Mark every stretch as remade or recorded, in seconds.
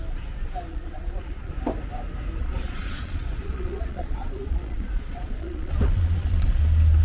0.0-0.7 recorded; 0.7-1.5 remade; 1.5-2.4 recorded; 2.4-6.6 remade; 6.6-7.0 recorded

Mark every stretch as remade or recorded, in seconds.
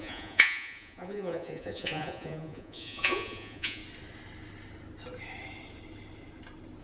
0.0-3.8 remade; 3.8-6.8 recorded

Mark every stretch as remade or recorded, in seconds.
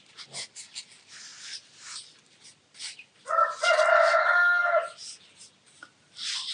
0.0-6.5 recorded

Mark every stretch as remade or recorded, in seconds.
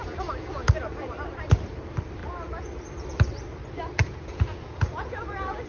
0.0-4.0 recorded; 4.0-5.2 remade; 5.2-5.7 recorded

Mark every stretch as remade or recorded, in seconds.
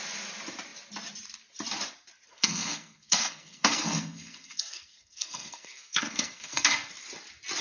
0.0-2.3 recorded; 2.3-6.9 remade; 6.9-7.6 recorded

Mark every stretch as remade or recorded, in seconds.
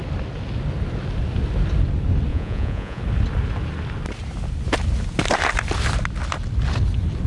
0.0-2.3 recorded; 2.3-3.0 remade; 3.0-7.3 recorded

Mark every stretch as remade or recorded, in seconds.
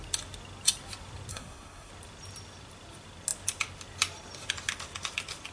0.0-1.3 recorded; 1.3-1.9 remade; 1.9-5.5 recorded